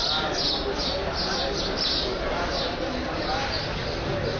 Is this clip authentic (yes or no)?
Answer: yes